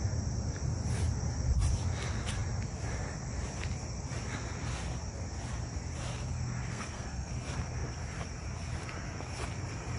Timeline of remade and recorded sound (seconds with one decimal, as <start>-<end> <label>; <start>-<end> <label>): 0.0-6.7 recorded; 6.7-7.3 remade; 7.3-10.0 recorded